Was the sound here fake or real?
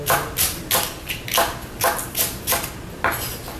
real